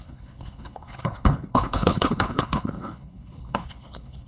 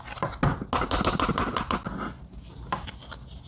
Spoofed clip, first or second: first